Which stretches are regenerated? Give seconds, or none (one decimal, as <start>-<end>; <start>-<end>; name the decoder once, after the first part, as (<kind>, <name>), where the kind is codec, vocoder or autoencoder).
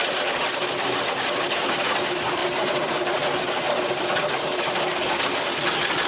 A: none